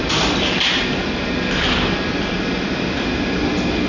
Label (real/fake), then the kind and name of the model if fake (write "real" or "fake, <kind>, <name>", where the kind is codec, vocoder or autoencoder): real